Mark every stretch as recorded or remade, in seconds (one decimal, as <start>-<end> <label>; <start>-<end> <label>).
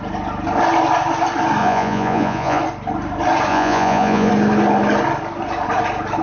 0.0-1.6 recorded; 1.6-2.6 remade; 2.6-3.5 recorded; 3.5-4.3 remade; 4.3-6.2 recorded